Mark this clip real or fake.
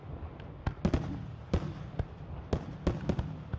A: real